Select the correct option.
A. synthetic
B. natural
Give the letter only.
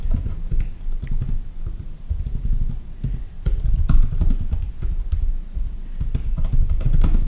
B